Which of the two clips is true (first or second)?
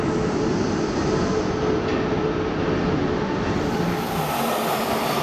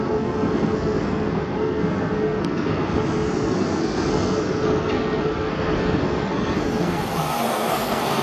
first